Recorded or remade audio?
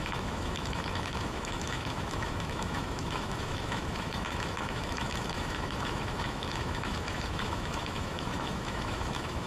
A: remade